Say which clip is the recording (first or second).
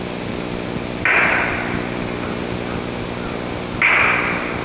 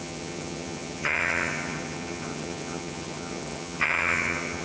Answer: first